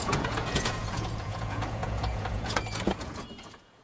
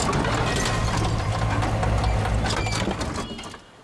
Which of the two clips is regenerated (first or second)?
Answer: first